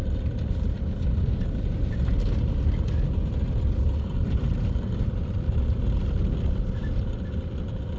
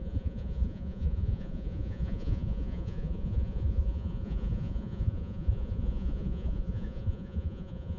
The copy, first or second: second